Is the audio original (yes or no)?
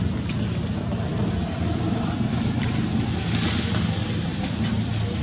yes